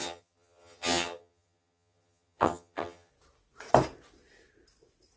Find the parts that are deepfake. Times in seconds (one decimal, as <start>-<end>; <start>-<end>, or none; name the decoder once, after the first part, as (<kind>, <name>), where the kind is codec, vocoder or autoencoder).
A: 0.0-3.1 (vocoder, HiFi-GAN)